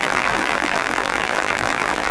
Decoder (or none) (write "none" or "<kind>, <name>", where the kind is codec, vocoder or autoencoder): vocoder, BigVGAN v2